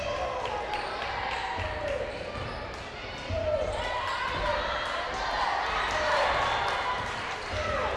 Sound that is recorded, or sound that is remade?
recorded